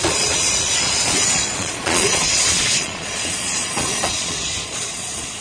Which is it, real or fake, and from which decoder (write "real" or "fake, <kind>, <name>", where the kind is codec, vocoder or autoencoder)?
fake, vocoder, Vocos